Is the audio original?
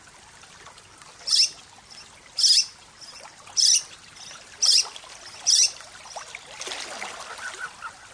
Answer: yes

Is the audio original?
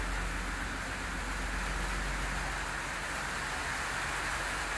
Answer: yes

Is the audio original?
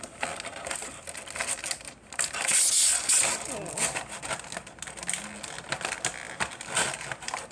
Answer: yes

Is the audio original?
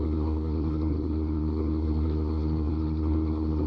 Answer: no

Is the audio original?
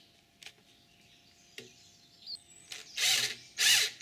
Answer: yes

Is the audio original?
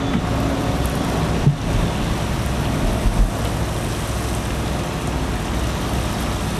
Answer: yes